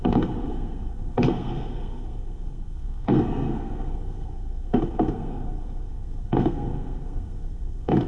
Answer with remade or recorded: remade